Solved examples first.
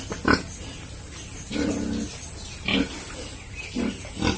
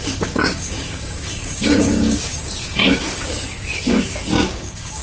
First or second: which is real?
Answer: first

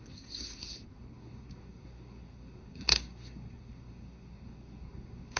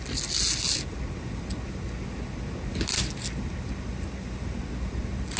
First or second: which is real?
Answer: second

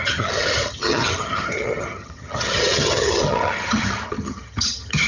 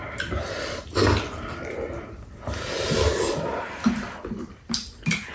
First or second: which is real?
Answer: second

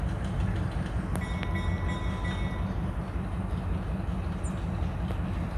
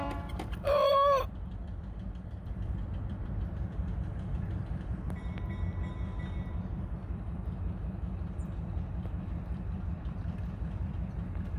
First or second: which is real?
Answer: first